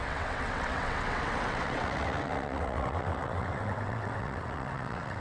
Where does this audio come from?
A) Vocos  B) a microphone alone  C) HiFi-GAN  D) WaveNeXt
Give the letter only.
D